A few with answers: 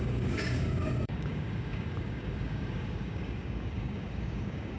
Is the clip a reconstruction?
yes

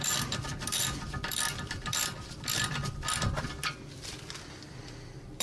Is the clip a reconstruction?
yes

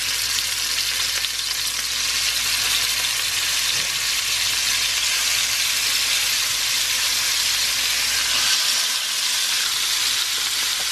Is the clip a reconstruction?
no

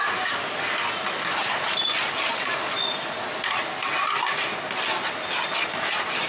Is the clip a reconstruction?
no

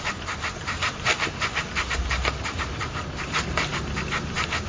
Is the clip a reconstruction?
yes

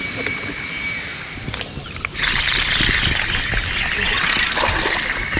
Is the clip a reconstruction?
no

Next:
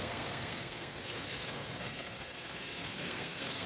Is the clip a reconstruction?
yes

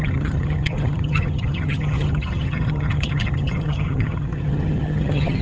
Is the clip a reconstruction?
yes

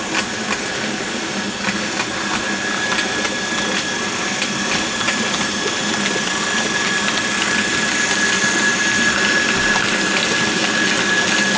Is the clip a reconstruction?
no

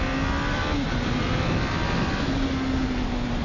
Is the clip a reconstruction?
no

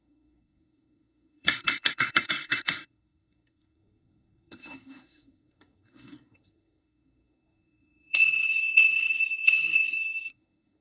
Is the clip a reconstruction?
yes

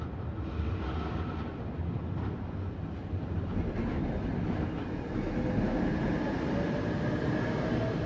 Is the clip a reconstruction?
no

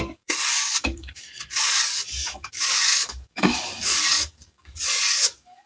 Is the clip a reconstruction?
yes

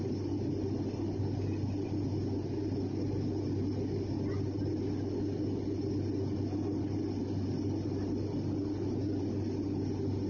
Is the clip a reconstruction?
no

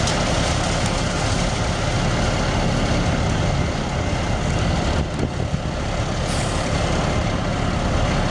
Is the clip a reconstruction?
no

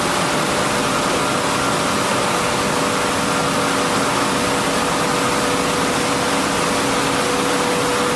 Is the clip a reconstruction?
no